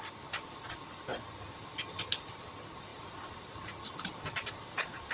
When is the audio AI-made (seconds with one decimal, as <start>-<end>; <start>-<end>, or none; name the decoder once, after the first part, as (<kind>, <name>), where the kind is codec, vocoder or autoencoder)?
0.0-1.1 (vocoder, BigVGAN v2); 2.2-5.1